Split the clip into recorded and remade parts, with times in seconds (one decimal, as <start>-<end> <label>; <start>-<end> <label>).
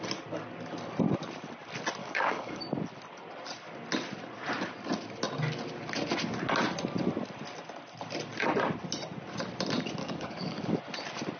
0.0-2.0 recorded; 2.0-2.6 remade; 2.6-10.0 recorded; 10.0-10.8 remade; 10.8-11.4 recorded